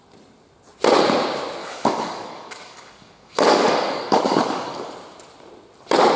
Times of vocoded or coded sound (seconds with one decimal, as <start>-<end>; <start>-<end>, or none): 1.6-4.9